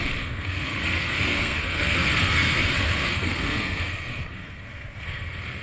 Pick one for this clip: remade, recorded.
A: remade